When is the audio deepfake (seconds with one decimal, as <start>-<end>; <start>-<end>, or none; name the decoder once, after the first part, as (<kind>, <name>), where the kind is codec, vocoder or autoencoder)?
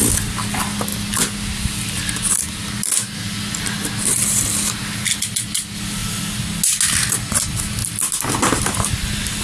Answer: none